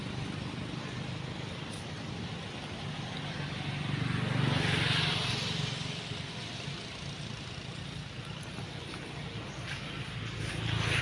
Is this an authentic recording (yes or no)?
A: yes